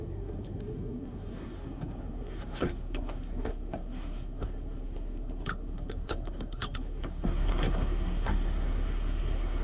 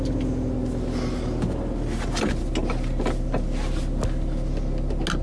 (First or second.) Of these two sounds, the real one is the second